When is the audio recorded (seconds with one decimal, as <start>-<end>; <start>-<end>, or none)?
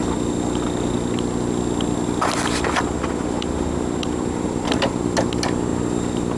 0.0-6.4